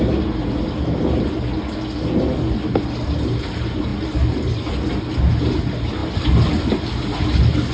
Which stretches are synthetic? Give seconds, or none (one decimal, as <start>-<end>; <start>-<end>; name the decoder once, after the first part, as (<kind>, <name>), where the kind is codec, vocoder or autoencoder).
none